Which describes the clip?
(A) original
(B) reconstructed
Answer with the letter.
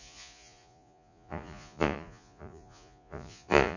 B